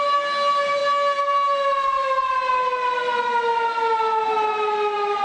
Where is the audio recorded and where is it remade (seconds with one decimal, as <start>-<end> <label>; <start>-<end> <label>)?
0.0-5.2 recorded